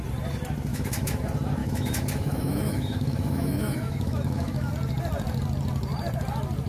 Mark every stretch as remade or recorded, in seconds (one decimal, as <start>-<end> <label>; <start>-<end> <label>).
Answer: 0.0-0.7 recorded; 0.7-1.2 remade; 1.2-1.6 recorded; 1.6-4.7 remade; 4.7-6.7 recorded